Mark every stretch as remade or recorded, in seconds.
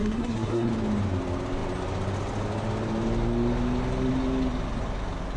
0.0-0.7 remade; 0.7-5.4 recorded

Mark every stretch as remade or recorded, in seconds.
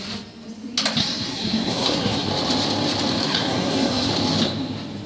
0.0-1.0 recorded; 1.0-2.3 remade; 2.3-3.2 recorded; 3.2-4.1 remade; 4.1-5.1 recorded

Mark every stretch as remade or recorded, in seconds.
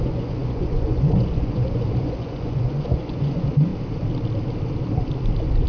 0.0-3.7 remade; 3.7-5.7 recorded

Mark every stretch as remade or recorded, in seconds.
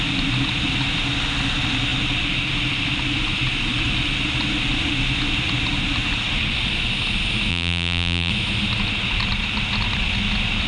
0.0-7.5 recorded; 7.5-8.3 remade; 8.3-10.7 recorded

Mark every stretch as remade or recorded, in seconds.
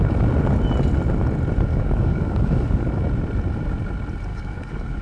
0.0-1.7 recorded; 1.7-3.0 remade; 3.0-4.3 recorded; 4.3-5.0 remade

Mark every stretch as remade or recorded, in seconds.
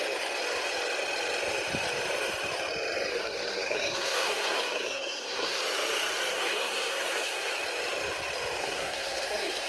0.0-3.1 recorded; 3.1-5.6 remade; 5.6-6.3 recorded; 6.3-7.5 remade; 7.5-8.6 recorded; 8.6-9.7 remade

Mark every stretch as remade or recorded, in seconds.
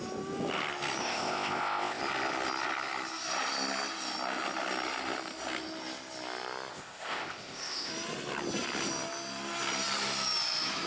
0.0-1.0 recorded; 1.0-2.0 remade; 2.0-6.7 recorded; 6.7-7.9 remade; 7.9-10.9 recorded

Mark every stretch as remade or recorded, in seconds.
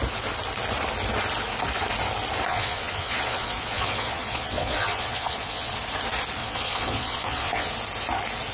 0.0-2.5 recorded; 2.5-5.7 remade; 5.7-6.4 recorded; 6.4-7.7 remade; 7.7-8.5 recorded